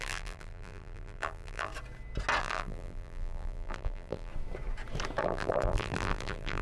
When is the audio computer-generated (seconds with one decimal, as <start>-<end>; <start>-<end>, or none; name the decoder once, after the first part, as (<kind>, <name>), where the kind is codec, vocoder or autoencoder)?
0.0-1.7 (vocoder, BigVGAN v2); 2.4-4.3; 5.2-6.6